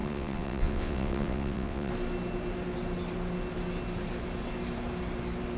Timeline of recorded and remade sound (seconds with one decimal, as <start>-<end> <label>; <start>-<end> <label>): 0.0-1.9 remade; 1.9-5.6 recorded